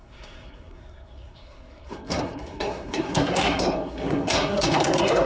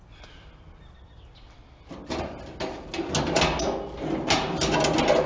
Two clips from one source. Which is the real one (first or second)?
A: second